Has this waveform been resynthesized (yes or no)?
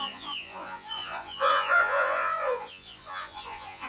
yes